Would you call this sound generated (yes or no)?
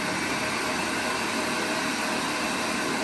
no